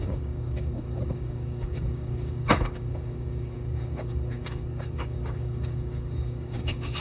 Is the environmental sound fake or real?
fake